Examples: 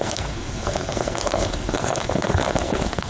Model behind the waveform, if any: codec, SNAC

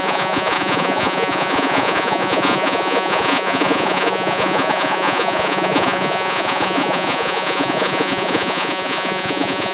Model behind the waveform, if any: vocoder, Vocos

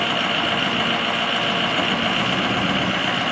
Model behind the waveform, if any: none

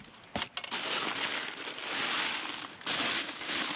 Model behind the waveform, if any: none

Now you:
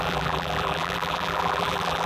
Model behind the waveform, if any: vocoder, BigVGAN v2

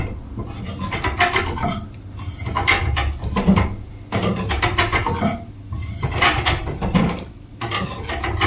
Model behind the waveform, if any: none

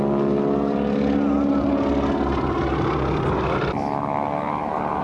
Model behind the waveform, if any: none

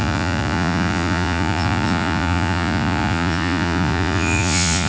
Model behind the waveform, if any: vocoder, Vocos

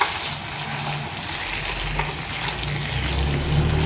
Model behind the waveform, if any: none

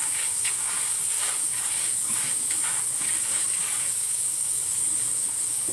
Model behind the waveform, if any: codec, DAC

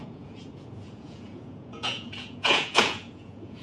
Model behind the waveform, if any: vocoder, Vocos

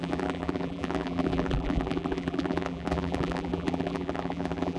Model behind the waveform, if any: vocoder, BigVGAN v2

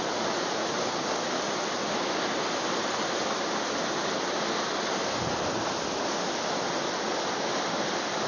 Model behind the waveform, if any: none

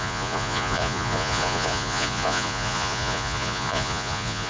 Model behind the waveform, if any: vocoder, Vocos